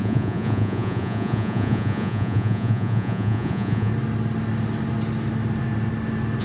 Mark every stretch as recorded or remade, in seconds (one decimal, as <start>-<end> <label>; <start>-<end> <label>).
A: 0.0-3.9 remade; 3.9-6.4 recorded